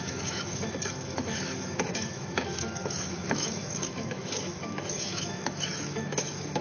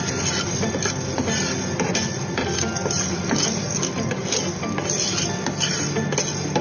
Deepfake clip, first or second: first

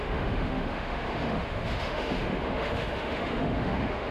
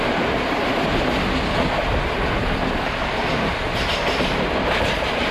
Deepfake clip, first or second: first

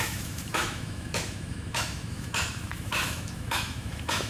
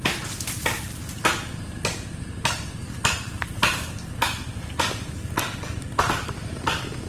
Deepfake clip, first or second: first